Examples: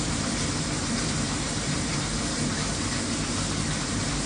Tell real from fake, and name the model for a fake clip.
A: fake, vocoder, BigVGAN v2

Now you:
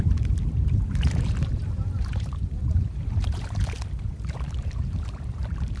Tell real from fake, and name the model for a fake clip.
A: fake, vocoder, BigVGAN v2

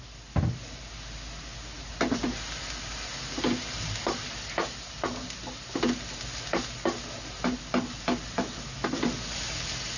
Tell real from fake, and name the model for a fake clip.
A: real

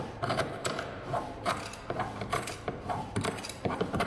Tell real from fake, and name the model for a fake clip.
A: fake, vocoder, BigVGAN v2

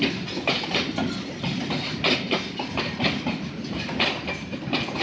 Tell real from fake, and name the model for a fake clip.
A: real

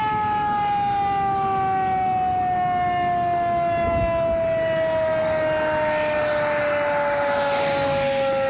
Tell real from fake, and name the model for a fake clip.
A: real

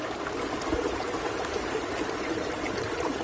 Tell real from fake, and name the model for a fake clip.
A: real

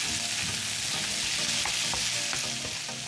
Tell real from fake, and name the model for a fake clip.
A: real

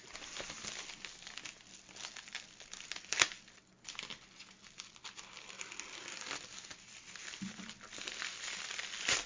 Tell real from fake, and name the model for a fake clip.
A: real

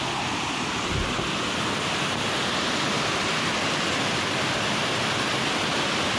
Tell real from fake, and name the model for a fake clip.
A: real